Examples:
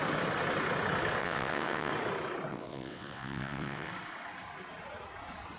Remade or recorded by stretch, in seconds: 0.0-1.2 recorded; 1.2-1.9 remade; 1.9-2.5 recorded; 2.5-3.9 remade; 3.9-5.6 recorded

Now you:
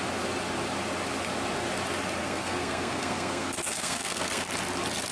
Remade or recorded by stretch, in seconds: 0.0-2.2 recorded; 2.2-4.5 remade; 4.5-5.1 recorded